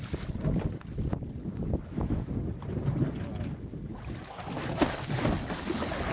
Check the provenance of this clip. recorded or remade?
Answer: recorded